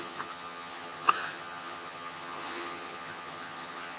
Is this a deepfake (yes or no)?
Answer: yes